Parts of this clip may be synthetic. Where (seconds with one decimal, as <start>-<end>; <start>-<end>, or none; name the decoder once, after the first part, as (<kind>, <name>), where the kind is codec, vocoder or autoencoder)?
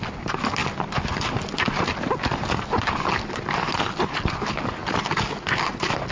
none